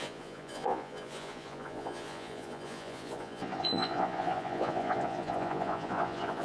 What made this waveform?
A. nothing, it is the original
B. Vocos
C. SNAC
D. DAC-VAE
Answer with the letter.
B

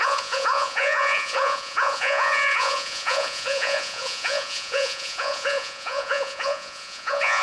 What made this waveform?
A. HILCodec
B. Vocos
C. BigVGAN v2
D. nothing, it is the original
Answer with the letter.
B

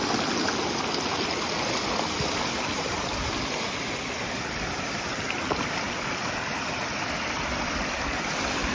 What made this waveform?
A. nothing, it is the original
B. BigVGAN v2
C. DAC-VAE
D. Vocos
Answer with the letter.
A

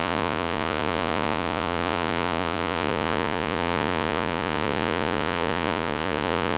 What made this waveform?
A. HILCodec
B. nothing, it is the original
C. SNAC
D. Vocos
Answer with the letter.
D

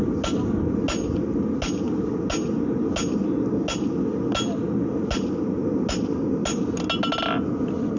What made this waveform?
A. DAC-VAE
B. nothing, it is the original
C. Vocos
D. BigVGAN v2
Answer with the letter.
B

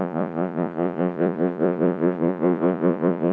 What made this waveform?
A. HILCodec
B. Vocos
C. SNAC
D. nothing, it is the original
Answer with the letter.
B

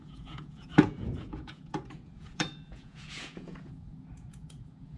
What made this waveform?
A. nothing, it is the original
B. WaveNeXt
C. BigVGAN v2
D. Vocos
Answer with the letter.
D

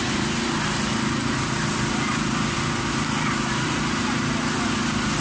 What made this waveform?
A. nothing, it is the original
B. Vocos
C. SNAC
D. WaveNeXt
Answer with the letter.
A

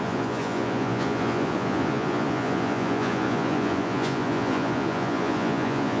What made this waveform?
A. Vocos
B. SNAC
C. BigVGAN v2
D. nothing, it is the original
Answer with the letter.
A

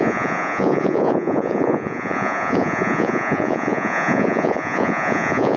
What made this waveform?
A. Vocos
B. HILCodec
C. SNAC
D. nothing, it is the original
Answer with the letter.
A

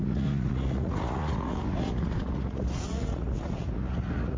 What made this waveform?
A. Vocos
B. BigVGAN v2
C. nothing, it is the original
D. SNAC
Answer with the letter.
A